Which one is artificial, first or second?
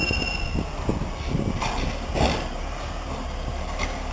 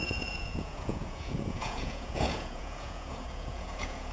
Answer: second